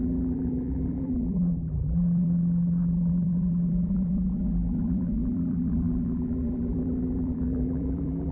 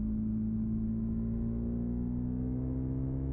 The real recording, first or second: second